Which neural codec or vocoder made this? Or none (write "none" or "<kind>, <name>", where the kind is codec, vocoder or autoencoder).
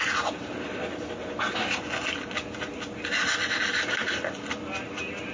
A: none